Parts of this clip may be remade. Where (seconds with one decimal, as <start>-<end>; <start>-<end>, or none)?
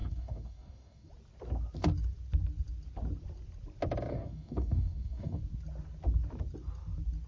0.0-1.1; 4.1-5.4